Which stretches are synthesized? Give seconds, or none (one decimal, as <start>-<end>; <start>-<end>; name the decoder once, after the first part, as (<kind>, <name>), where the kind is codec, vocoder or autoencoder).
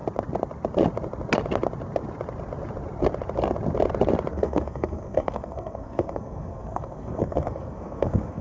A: 4.3-8.4 (codec, SNAC)